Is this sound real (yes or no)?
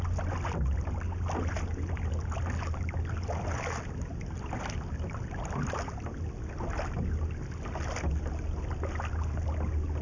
yes